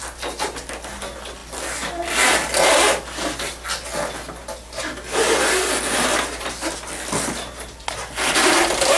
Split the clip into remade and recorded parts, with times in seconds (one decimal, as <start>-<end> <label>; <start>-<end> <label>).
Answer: 0.0-9.0 recorded